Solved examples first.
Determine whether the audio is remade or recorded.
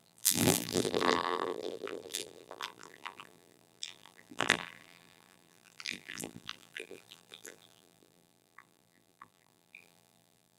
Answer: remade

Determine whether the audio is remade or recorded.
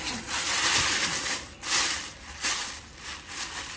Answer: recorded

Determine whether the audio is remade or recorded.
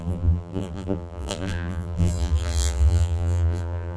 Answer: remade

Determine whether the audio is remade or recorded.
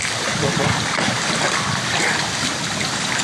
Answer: recorded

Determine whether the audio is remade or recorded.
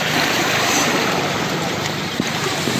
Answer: remade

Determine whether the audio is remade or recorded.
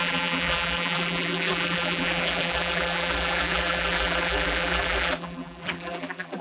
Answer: remade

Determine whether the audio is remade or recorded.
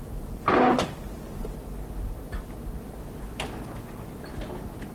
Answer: recorded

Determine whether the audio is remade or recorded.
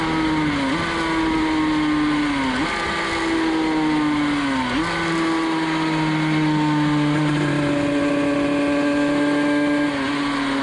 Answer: recorded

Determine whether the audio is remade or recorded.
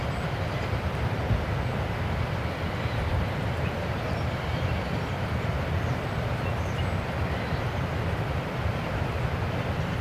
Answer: remade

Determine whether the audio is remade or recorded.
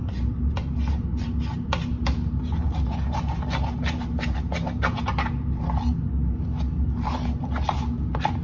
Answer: recorded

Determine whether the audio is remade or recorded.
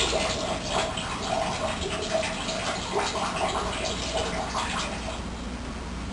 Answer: recorded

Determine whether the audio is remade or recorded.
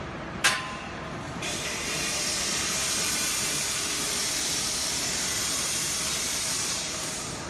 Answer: remade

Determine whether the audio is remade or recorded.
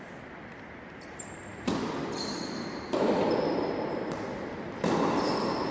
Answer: remade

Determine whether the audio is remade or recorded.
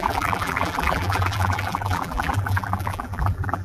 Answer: remade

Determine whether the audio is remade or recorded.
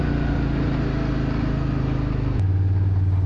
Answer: recorded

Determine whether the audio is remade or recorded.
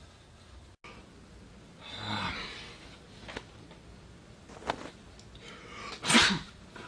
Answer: recorded